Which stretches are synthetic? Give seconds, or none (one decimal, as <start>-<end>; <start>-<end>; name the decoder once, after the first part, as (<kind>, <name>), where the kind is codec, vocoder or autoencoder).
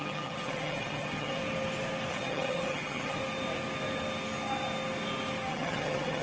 0.0-1.4 (vocoder, HiFi-GAN); 2.1-3.2; 5.5-6.2